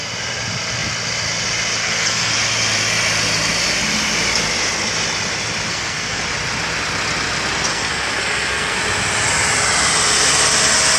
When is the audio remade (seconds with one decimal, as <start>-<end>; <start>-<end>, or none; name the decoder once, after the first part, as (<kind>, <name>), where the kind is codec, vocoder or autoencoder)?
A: 1.8-2.3 (codec, SNAC); 5.7-6.2; 7.7-8.8